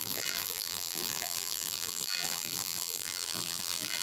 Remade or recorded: remade